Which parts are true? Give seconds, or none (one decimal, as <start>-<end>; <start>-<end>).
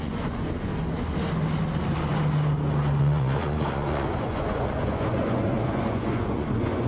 0.7-3.0